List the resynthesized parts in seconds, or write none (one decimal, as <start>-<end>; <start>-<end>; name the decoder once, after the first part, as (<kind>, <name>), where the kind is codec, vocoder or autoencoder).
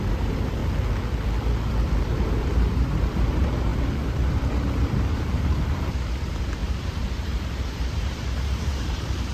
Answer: 0.0-0.6 (vocoder, BigVGAN v2); 2.0-9.3